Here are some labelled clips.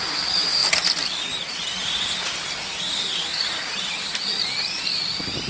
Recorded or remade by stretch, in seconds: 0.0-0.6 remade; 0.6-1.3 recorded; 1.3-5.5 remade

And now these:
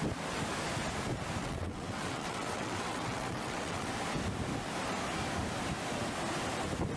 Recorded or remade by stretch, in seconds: 0.0-1.4 recorded; 1.4-3.9 remade; 3.9-7.0 recorded

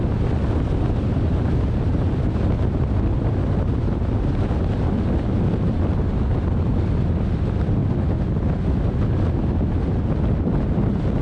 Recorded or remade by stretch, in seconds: 0.0-11.2 recorded

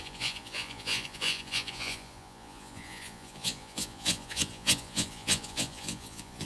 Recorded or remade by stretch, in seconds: 0.0-6.4 remade

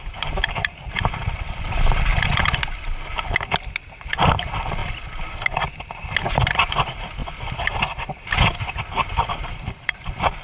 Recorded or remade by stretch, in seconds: 0.0-2.1 remade; 2.1-4.0 recorded; 4.0-4.8 remade; 4.8-6.3 recorded; 6.3-7.2 remade; 7.2-8.8 recorded; 8.8-10.4 remade

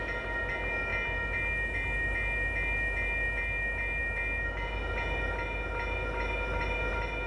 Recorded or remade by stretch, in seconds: 0.0-7.3 recorded

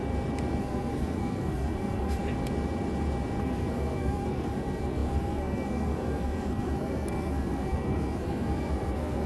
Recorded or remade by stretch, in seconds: 0.0-0.6 recorded; 0.6-2.2 remade; 2.2-3.4 recorded; 3.4-9.3 remade

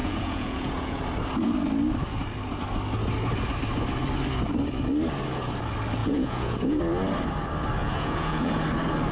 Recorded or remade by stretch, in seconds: 0.0-1.0 remade; 1.0-6.0 recorded; 6.0-6.8 remade; 6.8-7.8 recorded; 7.8-8.5 remade; 8.5-9.1 recorded